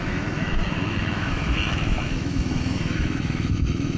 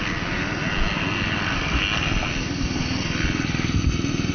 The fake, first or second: first